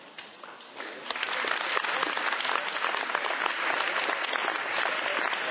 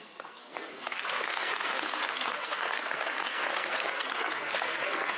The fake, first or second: second